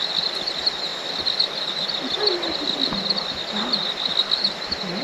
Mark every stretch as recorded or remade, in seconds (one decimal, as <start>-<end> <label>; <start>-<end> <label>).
0.0-5.0 recorded